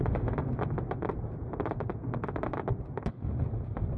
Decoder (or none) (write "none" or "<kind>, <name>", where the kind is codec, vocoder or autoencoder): none